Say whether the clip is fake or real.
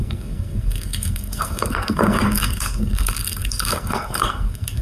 fake